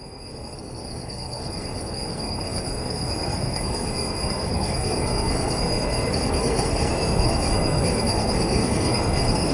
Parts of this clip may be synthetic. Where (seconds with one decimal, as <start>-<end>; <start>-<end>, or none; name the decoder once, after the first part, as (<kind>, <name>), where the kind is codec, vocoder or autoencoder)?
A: 0.0-9.5 (codec, SNAC)